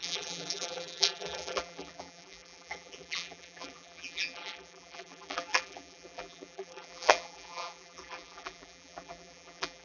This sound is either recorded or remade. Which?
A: remade